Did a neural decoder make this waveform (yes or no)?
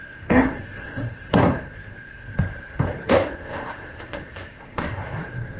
yes